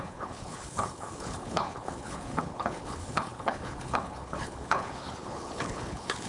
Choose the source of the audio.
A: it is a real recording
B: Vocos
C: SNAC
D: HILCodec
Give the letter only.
D